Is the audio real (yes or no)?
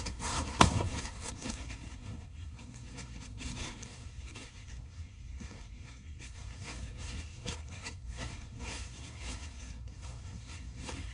no